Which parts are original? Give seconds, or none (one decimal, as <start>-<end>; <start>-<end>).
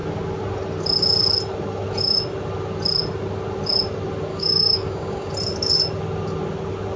0.0-4.3; 5.3-7.0